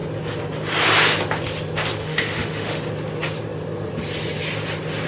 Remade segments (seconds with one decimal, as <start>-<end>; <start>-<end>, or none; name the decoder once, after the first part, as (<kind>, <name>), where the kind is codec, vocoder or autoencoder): 2.0-2.8 (autoencoder, DAC-VAE)